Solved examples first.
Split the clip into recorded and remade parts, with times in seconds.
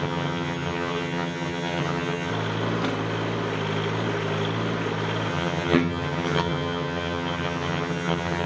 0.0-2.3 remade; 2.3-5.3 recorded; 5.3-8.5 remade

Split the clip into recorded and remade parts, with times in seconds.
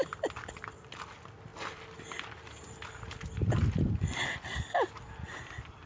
0.0-5.9 recorded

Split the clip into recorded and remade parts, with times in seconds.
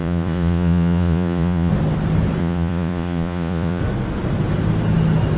0.0-1.7 remade; 1.7-2.4 recorded; 2.4-3.8 remade; 3.8-5.4 recorded